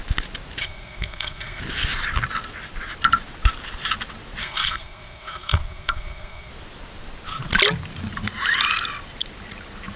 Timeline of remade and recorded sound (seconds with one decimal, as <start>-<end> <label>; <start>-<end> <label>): 0.0-0.6 recorded; 0.6-1.6 remade; 1.6-4.4 recorded; 4.4-6.5 remade; 6.5-10.0 recorded